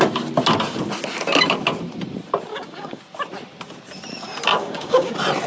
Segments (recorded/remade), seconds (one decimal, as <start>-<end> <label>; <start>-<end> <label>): 0.0-2.5 recorded; 2.5-3.0 remade; 3.0-4.6 recorded; 4.6-5.1 remade; 5.1-5.5 recorded